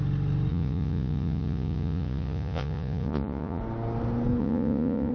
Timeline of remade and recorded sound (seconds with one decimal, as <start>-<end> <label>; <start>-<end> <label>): 0.0-0.5 recorded; 0.5-3.6 remade; 3.6-4.4 recorded; 4.4-5.1 remade